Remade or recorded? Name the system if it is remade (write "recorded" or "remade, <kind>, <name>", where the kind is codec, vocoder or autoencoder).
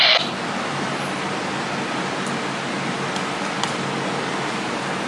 recorded